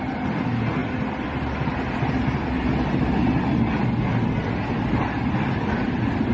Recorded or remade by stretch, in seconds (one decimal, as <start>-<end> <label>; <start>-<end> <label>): 0.0-6.3 recorded